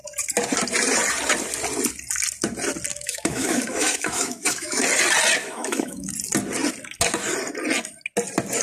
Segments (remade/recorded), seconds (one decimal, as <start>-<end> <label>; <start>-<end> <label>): 0.0-2.9 recorded; 2.9-4.8 remade; 4.8-5.4 recorded; 5.4-6.1 remade; 6.1-8.6 recorded